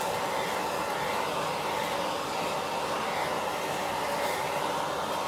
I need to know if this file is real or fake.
real